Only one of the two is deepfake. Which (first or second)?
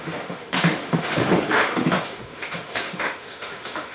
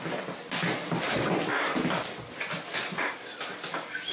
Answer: first